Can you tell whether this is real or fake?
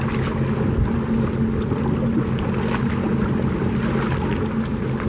real